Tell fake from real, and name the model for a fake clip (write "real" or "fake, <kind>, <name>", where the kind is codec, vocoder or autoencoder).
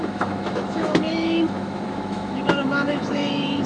fake, autoencoder, DAC-VAE